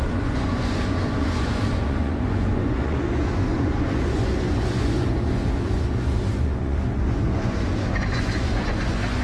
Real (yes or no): no